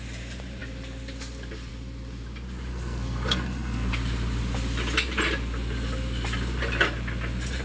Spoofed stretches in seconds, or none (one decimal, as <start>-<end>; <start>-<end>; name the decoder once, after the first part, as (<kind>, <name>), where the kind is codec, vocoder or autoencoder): 2.7-3.9 (codec, SNAC)